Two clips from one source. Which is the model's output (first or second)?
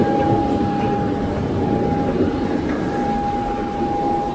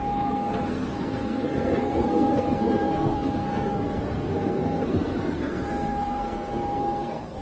second